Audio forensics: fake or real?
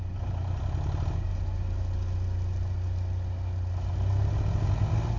real